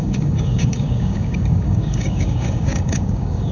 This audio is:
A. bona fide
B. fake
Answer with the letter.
B